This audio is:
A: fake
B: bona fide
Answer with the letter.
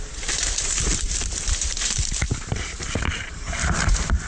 A